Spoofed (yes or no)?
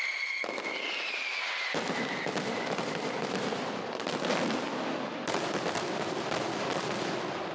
no